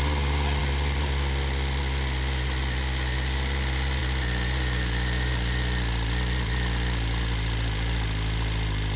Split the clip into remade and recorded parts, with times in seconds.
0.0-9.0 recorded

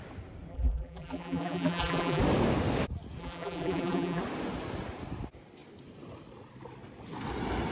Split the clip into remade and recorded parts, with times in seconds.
0.0-0.5 recorded; 0.5-2.2 remade; 2.2-3.2 recorded; 3.2-4.2 remade; 4.2-7.7 recorded

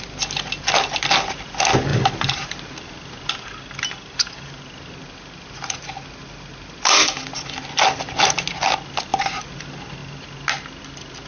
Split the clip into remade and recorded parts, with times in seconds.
0.0-11.3 recorded

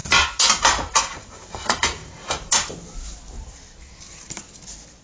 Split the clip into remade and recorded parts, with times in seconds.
0.0-0.6 recorded; 0.6-2.0 remade; 2.0-5.0 recorded